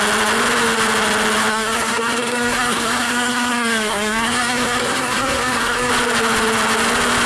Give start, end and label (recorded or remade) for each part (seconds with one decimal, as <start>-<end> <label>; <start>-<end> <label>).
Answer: 0.0-1.5 recorded; 1.5-5.9 remade; 5.9-7.3 recorded